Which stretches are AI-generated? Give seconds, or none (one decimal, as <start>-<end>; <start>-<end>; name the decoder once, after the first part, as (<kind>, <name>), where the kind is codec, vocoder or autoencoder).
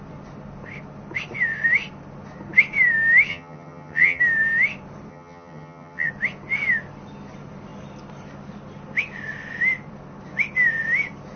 3.3-4.2 (vocoder, HiFi-GAN); 5.1-6.1